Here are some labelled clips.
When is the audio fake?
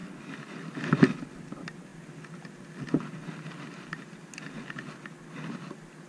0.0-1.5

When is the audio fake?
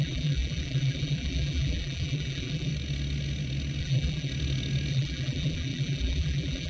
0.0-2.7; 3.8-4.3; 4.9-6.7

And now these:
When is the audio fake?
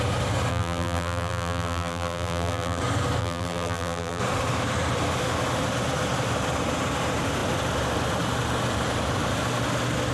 0.5-2.8; 3.2-4.2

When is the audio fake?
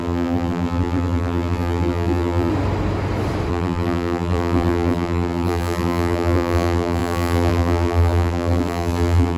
0.0-2.5; 3.5-9.4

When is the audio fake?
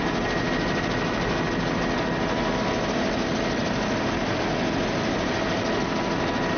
3.6-4.2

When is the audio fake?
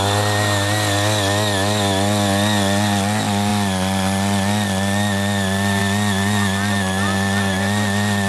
none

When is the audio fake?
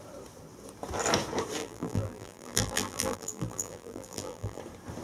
1.6-4.6